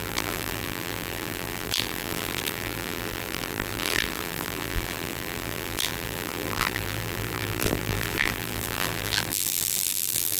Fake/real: fake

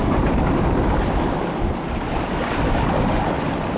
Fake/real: real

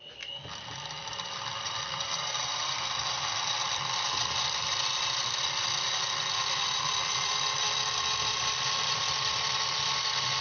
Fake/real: fake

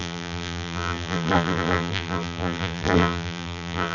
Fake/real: fake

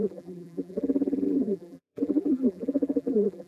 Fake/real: fake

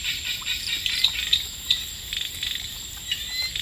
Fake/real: fake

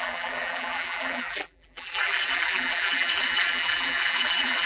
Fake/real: fake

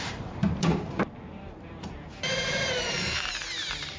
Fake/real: fake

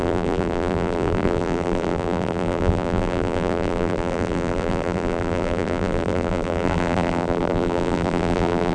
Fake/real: fake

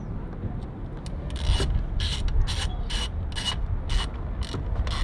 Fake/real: real